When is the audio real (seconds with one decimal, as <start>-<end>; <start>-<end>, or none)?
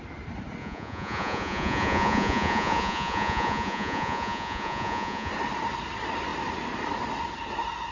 0.0-0.6; 5.3-7.9